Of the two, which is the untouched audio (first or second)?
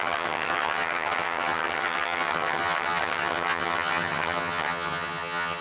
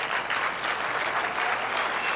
second